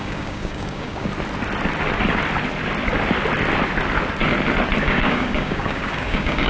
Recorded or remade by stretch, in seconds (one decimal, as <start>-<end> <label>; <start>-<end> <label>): 0.0-1.1 remade; 1.1-4.8 recorded; 4.8-6.5 remade